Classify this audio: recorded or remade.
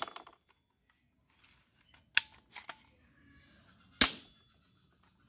recorded